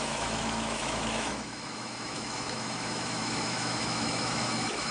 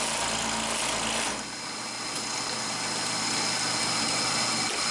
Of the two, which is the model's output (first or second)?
first